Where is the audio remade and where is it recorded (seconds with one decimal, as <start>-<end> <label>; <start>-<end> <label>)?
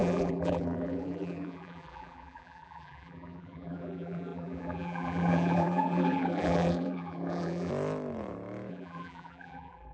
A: 0.0-7.7 remade; 7.7-8.7 recorded; 8.7-9.9 remade